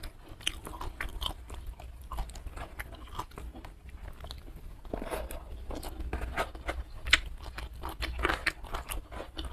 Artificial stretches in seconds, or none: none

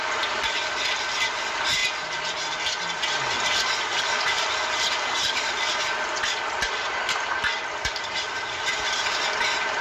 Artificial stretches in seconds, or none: 0.0-1.8 (vocoder, BigVGAN v2); 4.0-9.8